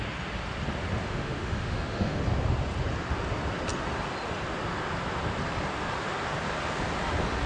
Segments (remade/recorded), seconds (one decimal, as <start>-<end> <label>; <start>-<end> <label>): 0.0-1.0 recorded; 1.0-2.2 remade; 2.2-7.5 recorded